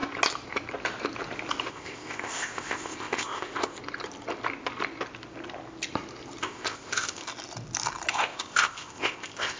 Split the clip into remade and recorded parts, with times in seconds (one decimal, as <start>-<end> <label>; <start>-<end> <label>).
0.0-1.7 recorded; 1.7-3.8 remade; 3.8-6.4 recorded; 6.4-7.2 remade; 7.2-8.1 recorded; 8.1-9.6 remade